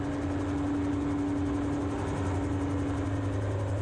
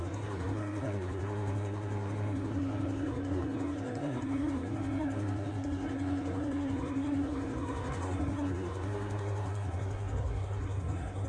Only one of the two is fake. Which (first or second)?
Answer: second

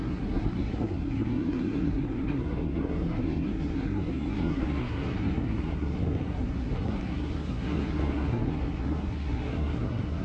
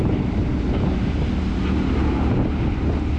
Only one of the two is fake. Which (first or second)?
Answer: first